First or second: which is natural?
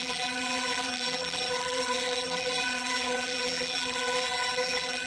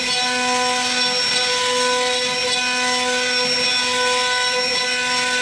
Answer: second